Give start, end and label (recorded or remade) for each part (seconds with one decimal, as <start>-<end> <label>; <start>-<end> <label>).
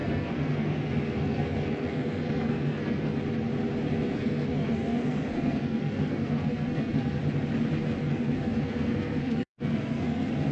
0.0-3.1 remade; 3.1-3.9 recorded; 3.9-7.2 remade; 7.2-8.1 recorded; 8.1-10.5 remade